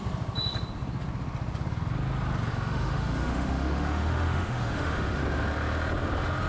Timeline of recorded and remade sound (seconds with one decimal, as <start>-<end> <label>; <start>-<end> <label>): 0.0-2.5 recorded; 2.5-5.2 remade; 5.2-6.5 recorded